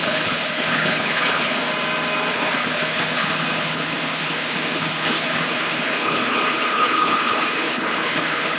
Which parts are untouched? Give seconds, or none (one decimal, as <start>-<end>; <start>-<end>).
1.7-2.3